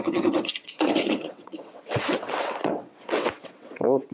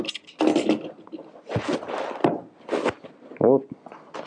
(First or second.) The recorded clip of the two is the second